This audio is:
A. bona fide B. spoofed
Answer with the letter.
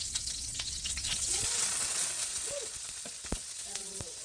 B